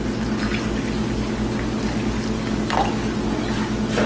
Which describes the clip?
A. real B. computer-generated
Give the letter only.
A